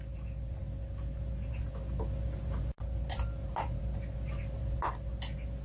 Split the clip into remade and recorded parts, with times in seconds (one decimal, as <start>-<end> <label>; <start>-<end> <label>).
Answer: 0.0-5.6 recorded